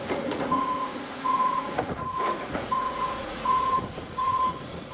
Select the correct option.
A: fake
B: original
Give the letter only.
A